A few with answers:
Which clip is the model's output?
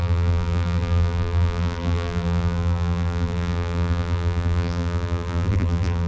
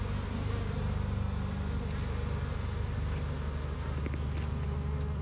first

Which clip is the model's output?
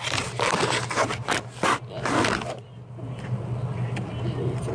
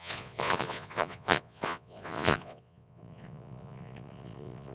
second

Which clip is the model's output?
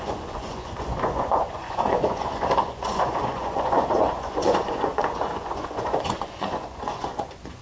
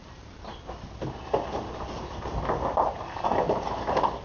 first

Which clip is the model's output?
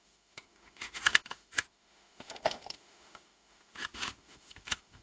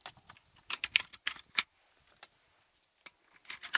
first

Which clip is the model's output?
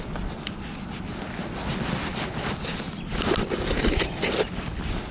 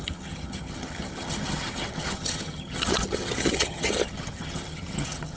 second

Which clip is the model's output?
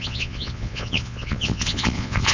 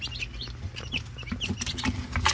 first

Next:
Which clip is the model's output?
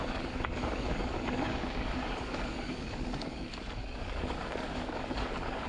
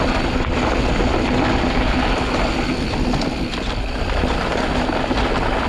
first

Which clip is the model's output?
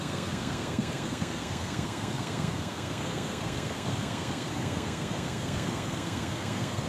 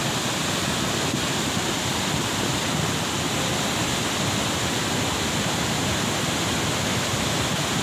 first